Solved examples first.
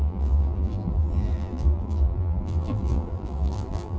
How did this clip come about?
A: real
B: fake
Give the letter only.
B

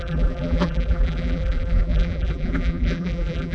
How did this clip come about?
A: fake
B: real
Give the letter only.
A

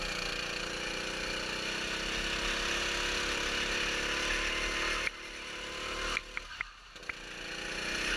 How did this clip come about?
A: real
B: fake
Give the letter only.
A